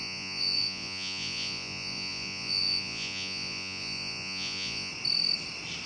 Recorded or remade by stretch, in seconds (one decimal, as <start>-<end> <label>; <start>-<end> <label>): 0.0-4.9 remade; 4.9-5.9 recorded

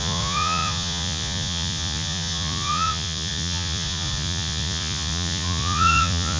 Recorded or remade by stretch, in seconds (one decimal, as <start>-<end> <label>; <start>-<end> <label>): 0.0-6.4 remade